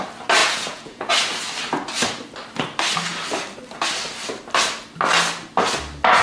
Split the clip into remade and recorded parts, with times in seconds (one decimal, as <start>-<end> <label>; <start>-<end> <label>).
0.0-0.4 recorded; 0.4-1.1 remade; 1.1-6.2 recorded